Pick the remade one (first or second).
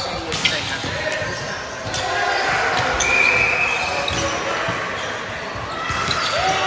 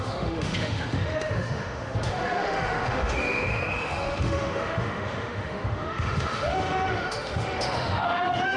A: second